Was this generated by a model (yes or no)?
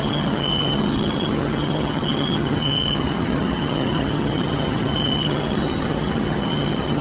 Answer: yes